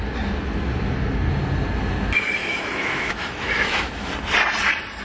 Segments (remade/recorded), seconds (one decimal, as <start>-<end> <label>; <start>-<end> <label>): 0.0-2.4 recorded; 2.4-4.1 remade; 4.1-5.0 recorded

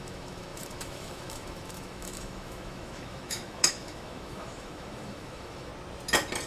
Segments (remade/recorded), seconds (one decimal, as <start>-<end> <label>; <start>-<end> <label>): 0.0-5.7 remade; 5.7-6.5 recorded

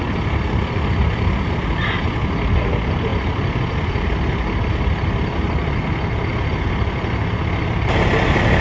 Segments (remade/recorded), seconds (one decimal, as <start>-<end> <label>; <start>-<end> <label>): 0.0-8.6 recorded

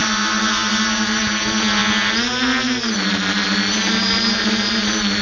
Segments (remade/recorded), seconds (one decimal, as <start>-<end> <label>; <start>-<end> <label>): 0.0-5.2 recorded

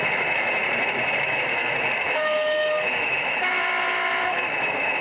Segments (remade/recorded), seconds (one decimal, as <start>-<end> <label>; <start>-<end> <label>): 0.0-0.6 remade; 0.6-1.2 recorded; 1.2-5.0 remade

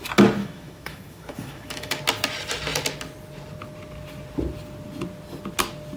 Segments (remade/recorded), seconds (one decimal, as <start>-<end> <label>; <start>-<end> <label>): 0.0-0.4 recorded; 0.4-2.0 remade; 2.0-6.0 recorded

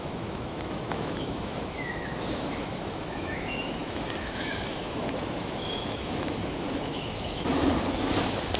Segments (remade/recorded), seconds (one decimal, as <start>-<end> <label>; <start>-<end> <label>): 0.0-7.5 remade; 7.5-8.6 recorded

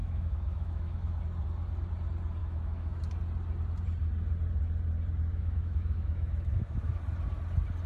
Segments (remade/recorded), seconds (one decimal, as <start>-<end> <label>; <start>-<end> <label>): 0.0-1.1 remade; 1.1-2.4 recorded; 2.4-3.0 remade; 3.0-5.3 recorded; 5.3-7.0 remade; 7.0-7.9 recorded